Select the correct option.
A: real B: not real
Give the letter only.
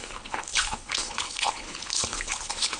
B